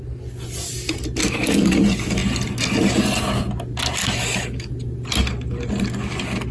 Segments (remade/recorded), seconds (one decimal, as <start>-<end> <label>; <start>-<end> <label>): 0.0-1.2 recorded; 1.2-1.8 remade; 1.8-4.0 recorded; 4.0-4.7 remade; 4.7-6.5 recorded